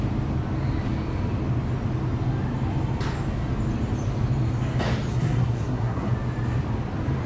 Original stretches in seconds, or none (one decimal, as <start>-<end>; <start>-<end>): 0.0-5.1; 6.1-7.3